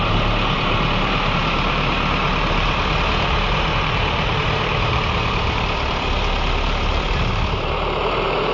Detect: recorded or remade remade